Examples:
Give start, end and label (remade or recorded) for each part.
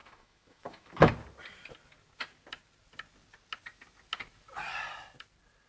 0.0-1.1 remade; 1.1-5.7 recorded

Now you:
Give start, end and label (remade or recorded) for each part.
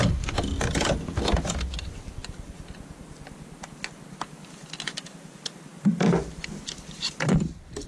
0.0-7.9 recorded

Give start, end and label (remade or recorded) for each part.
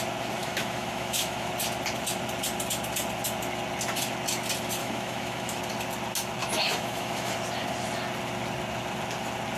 0.0-0.4 recorded; 0.4-1.5 remade; 1.5-4.8 recorded; 4.8-5.6 remade; 5.6-6.4 recorded; 6.4-7.3 remade; 7.3-9.6 recorded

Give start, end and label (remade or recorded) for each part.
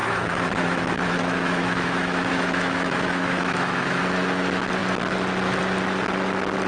0.0-4.0 remade; 4.0-6.7 recorded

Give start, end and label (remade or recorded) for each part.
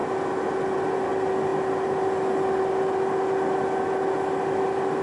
0.0-5.0 recorded